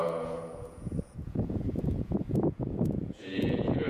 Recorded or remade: remade